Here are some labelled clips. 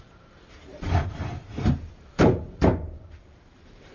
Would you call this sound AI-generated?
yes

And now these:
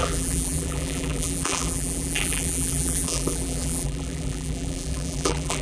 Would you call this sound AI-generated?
yes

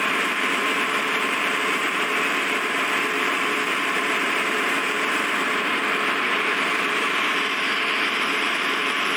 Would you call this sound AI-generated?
yes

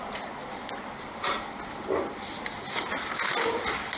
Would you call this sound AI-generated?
no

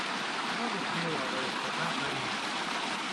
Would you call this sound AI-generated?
no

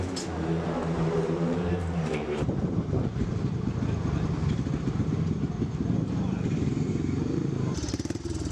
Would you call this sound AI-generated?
yes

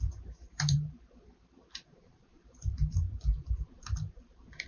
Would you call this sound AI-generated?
yes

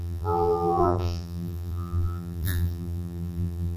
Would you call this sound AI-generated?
yes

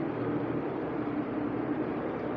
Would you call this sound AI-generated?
yes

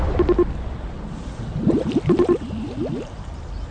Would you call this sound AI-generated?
no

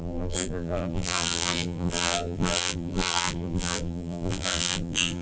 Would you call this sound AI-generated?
yes